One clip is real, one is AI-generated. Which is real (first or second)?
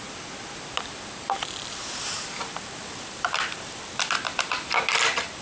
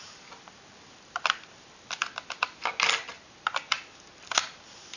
second